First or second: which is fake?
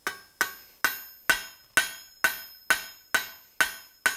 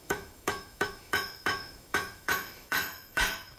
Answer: second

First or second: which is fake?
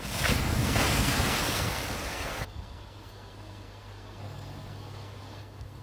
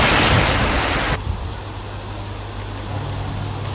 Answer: first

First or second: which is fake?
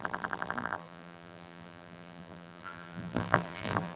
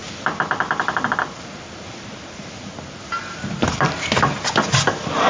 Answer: first